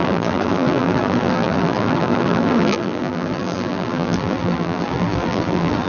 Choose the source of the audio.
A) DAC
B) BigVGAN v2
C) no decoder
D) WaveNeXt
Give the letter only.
B